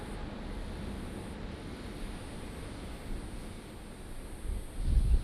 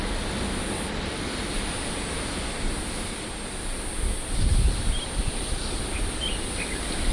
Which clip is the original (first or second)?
first